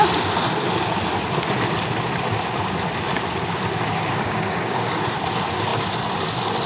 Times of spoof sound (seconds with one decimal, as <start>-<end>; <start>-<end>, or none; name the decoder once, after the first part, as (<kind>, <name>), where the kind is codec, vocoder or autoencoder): 3.9-4.9 (codec, DAC)